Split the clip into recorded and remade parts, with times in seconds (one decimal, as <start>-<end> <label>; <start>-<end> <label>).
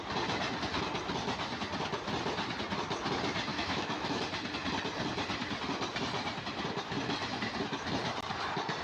0.0-3.5 recorded; 3.5-4.2 remade; 4.2-8.8 recorded